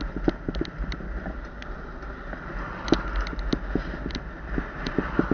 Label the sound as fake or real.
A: real